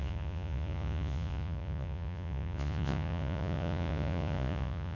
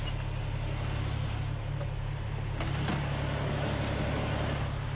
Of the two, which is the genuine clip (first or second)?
second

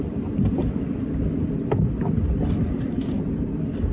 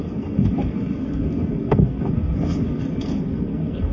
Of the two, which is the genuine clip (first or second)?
first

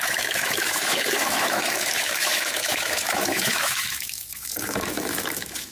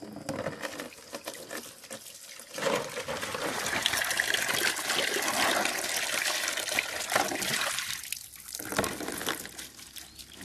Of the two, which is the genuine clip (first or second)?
second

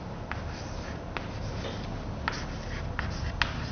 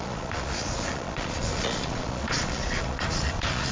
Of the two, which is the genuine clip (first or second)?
first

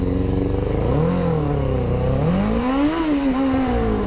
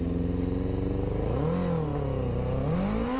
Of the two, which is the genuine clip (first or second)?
second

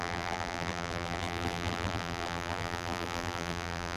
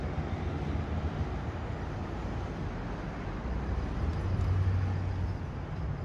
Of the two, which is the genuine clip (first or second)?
second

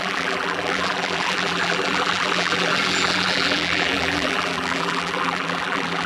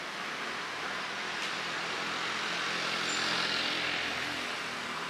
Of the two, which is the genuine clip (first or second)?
second